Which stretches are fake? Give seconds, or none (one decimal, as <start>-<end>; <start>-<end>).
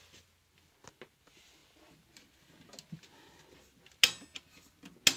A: none